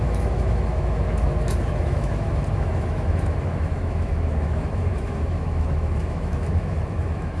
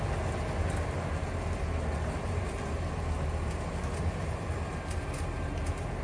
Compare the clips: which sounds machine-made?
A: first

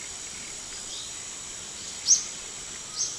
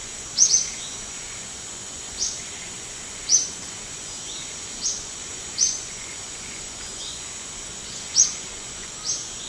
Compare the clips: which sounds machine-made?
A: second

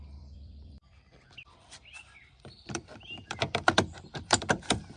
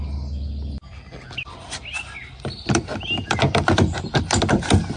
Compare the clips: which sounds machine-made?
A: first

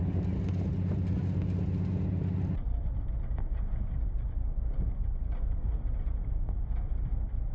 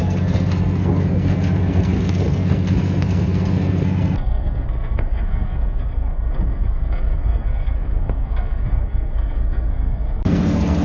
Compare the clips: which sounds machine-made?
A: second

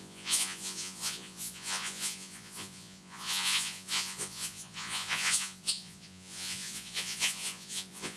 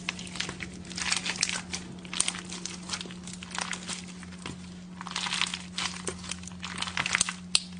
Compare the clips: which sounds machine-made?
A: first